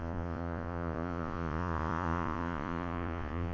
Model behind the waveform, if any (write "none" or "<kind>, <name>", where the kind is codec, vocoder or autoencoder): vocoder, Vocos